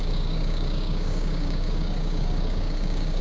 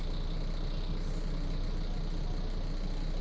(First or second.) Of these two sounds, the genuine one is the second